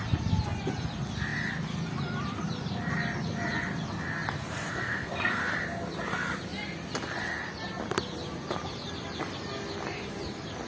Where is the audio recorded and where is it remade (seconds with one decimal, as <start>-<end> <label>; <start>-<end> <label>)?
0.0-4.7 recorded; 4.7-5.4 remade; 5.4-10.7 recorded